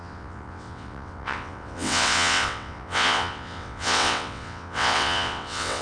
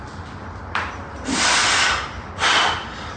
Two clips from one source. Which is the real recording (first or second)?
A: second